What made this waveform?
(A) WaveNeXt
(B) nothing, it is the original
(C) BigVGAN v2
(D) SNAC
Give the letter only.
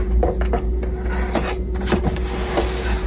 B